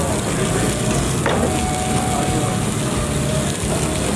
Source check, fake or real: real